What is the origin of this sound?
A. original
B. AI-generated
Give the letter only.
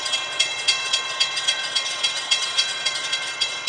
B